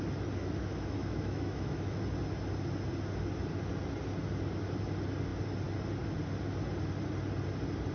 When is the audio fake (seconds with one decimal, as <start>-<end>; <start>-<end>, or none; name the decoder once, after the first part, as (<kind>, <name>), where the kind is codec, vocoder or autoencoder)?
0.4-2.0 (autoencoder, DAC-VAE)